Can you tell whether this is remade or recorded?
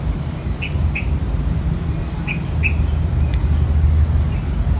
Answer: recorded